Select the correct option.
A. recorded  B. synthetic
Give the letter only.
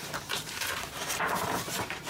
B